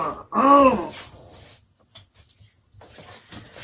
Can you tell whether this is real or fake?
real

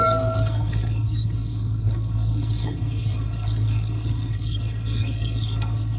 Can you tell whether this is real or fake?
fake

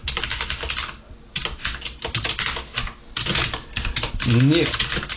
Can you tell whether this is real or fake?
real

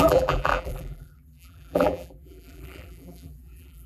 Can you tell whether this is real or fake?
fake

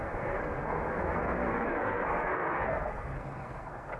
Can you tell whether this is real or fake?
fake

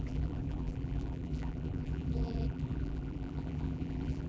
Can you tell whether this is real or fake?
fake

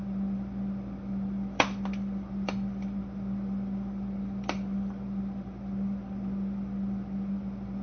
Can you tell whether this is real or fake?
fake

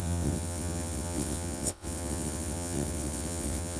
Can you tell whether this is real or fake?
fake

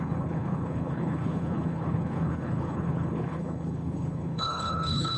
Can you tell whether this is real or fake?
fake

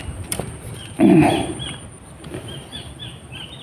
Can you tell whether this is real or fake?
fake